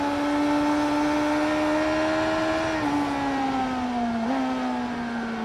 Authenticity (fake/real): real